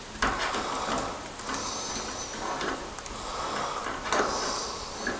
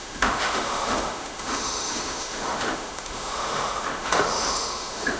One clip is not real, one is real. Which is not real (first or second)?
second